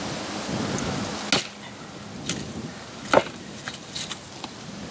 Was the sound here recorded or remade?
recorded